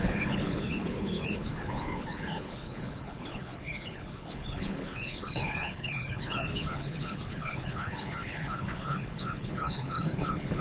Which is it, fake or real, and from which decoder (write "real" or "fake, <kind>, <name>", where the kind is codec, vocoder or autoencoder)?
fake, codec, HILCodec